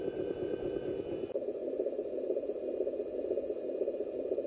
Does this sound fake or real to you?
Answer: real